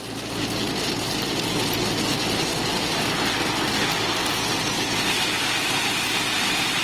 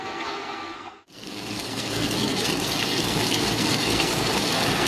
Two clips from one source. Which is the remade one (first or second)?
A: second